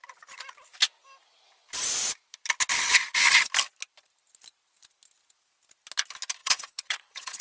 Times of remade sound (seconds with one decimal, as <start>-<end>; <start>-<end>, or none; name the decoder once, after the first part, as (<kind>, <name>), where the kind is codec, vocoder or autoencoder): 6.4-7.4 (vocoder, WaveNeXt)